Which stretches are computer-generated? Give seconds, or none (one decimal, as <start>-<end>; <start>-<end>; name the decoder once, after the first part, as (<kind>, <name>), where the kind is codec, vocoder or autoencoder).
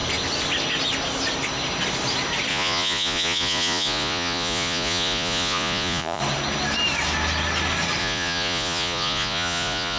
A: 2.5-6.2 (vocoder, Vocos); 8.0-10.0